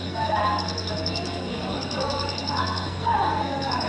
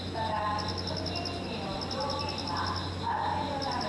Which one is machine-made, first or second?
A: first